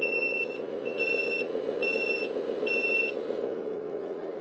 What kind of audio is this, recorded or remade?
remade